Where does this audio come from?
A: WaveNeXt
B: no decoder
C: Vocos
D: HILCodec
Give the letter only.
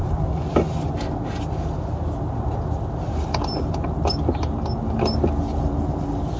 B